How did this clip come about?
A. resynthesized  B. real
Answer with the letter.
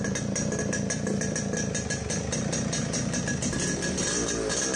B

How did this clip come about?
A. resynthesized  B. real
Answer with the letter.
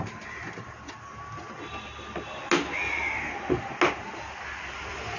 B